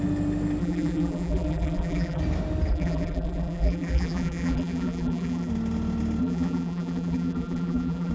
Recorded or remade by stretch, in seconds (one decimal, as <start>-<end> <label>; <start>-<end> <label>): 0.0-0.6 recorded; 0.6-2.2 remade; 2.2-2.7 recorded; 2.7-5.5 remade; 5.5-6.2 recorded; 6.2-8.1 remade